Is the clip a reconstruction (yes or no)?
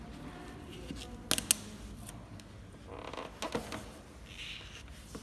no